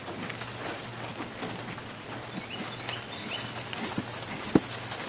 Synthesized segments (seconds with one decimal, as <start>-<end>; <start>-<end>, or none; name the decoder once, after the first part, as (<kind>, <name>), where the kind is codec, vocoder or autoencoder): none